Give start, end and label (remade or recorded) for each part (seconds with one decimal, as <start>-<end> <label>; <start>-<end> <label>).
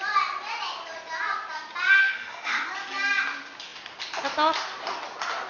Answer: 0.0-2.0 recorded; 2.0-2.6 remade; 2.6-5.5 recorded